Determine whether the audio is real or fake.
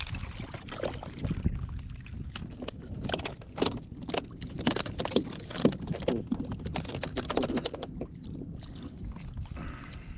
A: real